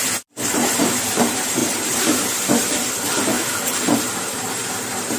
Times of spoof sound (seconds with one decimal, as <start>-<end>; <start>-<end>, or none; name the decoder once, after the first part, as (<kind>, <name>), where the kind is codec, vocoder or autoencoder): 0.5-5.2 (vocoder, BigVGAN v2)